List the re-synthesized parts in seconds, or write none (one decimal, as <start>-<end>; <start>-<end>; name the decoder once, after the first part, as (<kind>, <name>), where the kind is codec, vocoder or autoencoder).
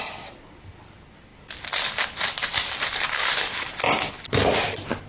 none